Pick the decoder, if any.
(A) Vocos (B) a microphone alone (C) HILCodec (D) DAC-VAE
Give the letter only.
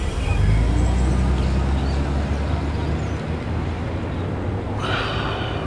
B